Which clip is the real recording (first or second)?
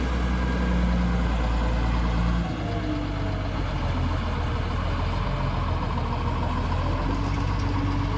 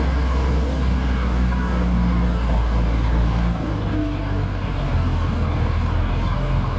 first